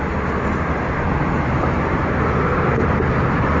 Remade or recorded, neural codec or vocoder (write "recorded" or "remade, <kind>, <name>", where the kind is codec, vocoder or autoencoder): recorded